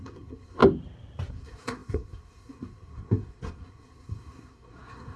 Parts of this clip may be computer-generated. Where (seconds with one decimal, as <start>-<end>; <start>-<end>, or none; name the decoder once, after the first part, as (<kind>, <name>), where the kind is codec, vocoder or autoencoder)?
0.0-0.6 (codec, SNAC); 1.3-5.2

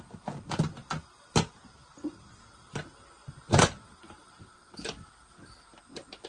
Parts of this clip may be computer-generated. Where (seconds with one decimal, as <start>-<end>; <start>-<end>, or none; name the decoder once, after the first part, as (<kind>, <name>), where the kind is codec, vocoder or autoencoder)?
1.6-2.3 (vocoder, BigVGAN v2); 3.2-5.8

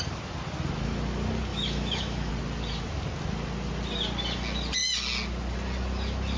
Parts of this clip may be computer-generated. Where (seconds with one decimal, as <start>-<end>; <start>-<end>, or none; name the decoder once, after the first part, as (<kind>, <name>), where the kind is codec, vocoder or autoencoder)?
1.5-2.3 (autoencoder, DAC-VAE)

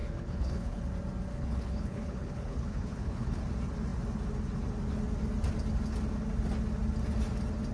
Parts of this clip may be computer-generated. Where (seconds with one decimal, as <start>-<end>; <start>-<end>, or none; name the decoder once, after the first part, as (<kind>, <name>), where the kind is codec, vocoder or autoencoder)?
0.0-0.8 (codec, HILCodec); 1.3-3.4

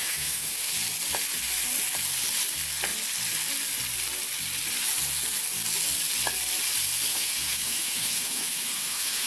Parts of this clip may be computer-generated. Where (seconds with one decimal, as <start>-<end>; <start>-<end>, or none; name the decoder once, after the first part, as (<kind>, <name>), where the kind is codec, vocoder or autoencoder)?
0.0-0.7 (autoencoder, DAC-VAE); 7.1-9.3

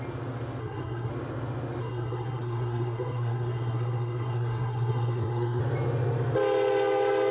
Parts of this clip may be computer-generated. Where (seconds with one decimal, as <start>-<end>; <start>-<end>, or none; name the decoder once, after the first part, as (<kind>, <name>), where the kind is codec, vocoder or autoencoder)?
0.6-1.1 (codec, SNAC); 1.8-5.6